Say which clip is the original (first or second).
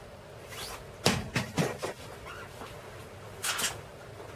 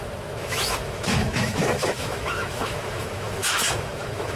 first